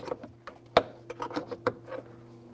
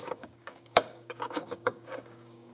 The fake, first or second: second